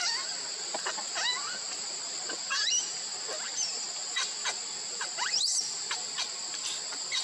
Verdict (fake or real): real